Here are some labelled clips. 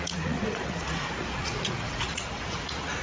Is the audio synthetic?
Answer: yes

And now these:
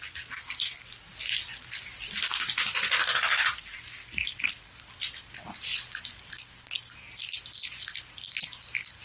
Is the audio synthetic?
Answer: no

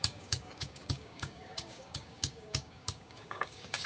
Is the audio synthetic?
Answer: yes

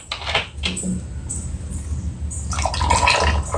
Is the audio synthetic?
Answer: no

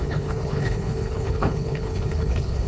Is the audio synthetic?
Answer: yes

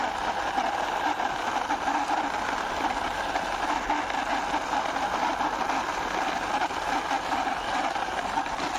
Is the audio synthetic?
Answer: no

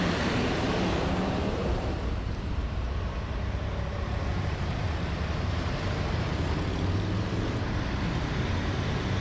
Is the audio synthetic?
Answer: yes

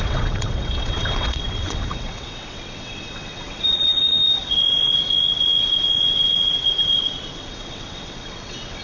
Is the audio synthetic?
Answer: yes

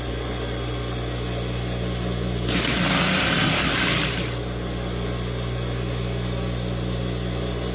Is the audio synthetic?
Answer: no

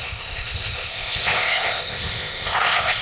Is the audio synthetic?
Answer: yes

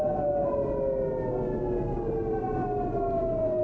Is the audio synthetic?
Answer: no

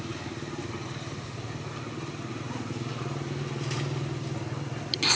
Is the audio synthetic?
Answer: no